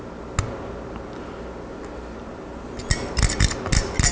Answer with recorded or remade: recorded